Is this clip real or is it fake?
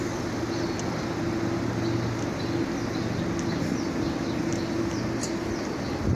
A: real